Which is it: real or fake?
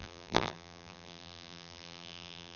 fake